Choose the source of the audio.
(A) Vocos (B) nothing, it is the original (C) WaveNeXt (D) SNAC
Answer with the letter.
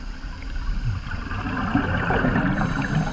B